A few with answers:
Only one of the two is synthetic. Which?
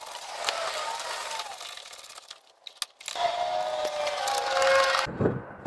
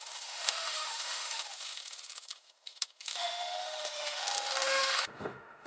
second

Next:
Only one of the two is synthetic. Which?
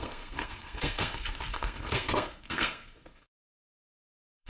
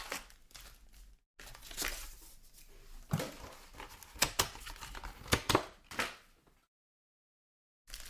first